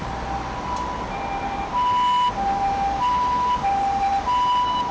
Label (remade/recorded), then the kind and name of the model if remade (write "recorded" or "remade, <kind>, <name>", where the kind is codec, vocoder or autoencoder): recorded